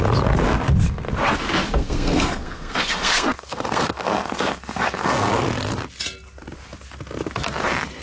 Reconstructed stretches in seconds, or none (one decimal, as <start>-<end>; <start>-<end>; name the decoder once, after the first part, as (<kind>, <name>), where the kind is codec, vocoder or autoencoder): 1.7-5.3 (codec, SNAC)